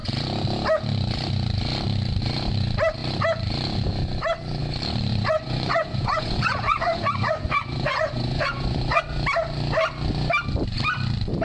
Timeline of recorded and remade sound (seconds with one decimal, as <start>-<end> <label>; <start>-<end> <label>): 0.0-5.1 recorded; 5.1-9.0 remade; 9.0-11.4 recorded